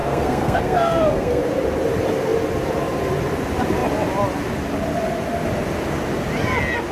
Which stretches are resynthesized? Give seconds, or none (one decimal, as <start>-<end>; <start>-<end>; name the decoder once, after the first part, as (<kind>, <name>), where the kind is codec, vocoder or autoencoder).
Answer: 0.0-1.4 (codec, SNAC)